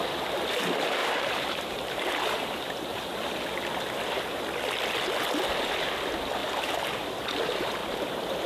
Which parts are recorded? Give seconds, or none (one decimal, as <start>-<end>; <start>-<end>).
0.0-1.0; 2.9-7.8